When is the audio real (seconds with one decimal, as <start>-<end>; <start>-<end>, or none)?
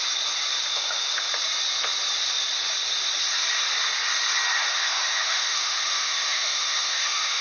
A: 0.0-0.7; 1.3-4.7